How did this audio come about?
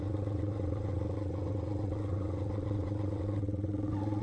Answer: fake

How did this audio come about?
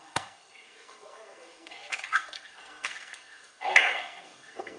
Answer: fake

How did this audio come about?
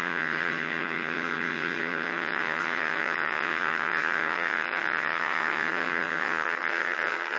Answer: fake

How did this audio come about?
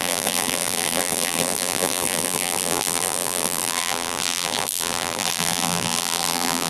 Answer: fake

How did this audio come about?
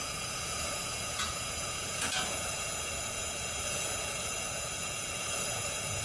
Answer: fake